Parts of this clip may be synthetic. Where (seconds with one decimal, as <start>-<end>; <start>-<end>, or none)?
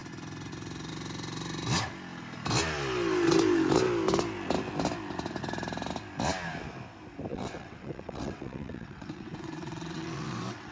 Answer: 7.3-10.7